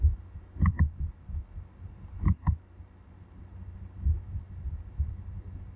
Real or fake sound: real